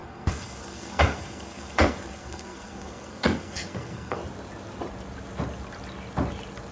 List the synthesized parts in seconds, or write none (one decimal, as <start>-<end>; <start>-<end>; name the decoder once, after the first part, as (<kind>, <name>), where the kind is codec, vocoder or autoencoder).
0.0-4.2 (codec, SNAC)